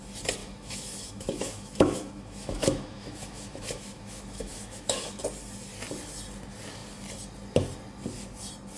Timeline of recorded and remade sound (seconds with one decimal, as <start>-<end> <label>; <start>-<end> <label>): 0.0-0.4 recorded; 0.4-5.2 remade; 5.2-8.8 recorded